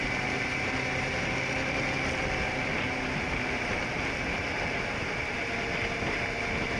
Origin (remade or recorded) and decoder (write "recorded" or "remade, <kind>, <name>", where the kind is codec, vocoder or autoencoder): recorded